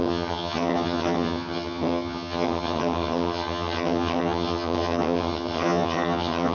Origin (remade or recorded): remade